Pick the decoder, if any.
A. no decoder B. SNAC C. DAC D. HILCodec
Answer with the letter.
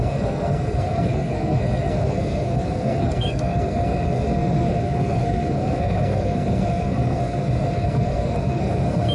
B